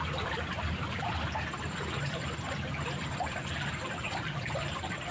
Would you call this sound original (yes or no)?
no